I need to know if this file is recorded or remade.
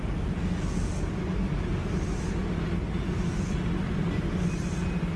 recorded